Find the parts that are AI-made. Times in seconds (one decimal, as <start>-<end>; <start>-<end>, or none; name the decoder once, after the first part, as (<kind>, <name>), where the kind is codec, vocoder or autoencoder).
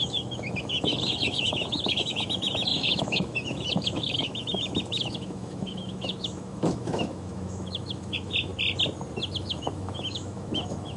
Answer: 0.0-8.5 (autoencoder, DAC-VAE); 9.4-11.0